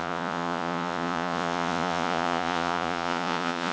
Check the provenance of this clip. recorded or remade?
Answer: remade